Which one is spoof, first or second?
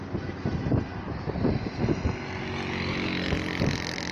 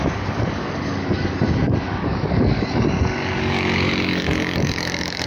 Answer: second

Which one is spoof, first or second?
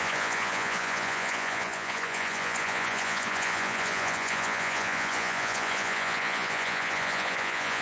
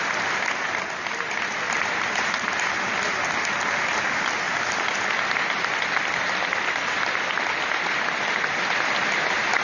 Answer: first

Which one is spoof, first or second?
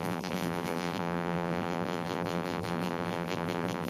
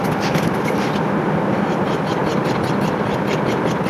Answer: first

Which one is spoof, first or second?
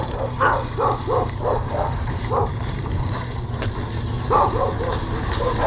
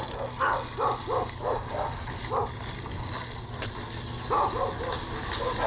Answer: first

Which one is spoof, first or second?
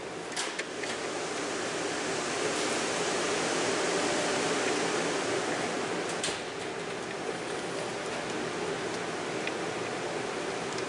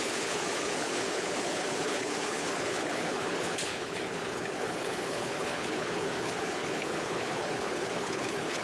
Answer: second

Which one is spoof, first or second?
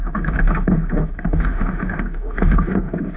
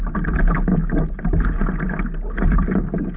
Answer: first